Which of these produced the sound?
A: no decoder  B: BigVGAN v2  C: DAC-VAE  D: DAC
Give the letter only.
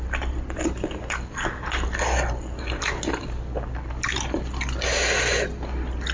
A